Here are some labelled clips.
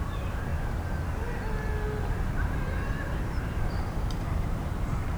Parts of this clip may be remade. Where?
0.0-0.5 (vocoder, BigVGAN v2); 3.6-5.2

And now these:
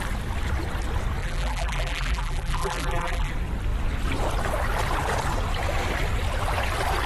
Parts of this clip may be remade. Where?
1.2-3.3 (vocoder, BigVGAN v2)

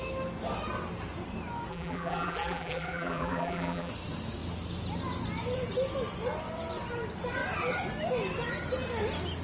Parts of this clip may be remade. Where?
1.7-3.9 (vocoder, BigVGAN v2)

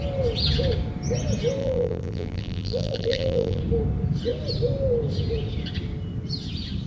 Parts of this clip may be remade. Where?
1.6-3.6 (vocoder, BigVGAN v2)

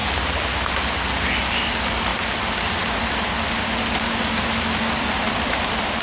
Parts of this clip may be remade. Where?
1.4-2.1 (vocoder, BigVGAN v2); 4.4-6.0